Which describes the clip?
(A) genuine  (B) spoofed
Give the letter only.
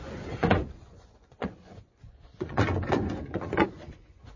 B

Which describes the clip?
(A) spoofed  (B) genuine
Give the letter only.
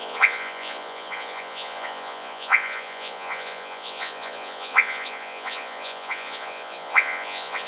A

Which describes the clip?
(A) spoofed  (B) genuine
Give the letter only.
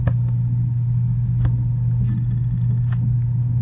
B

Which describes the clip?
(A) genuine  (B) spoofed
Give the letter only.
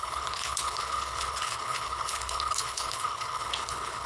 B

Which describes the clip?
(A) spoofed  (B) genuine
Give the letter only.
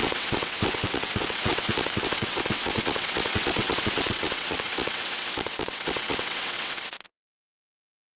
A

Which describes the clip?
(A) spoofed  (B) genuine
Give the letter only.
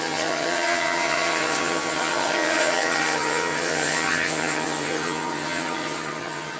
A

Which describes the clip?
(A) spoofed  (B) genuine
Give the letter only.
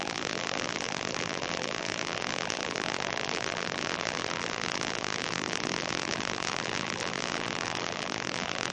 A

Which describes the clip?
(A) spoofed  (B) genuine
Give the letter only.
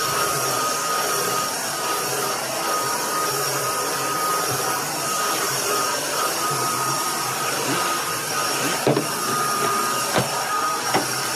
A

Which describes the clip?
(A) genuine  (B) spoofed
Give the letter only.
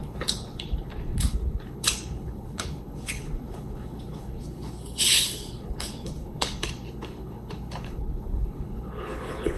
B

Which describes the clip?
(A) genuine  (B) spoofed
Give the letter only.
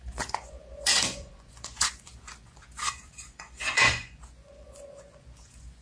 B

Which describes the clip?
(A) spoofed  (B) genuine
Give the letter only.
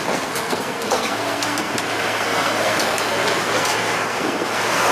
A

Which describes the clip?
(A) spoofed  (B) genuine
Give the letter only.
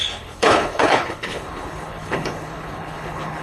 A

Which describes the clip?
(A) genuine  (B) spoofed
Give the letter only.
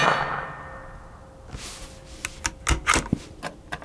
A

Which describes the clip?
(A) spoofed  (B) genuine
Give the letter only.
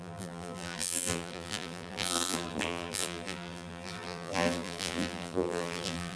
A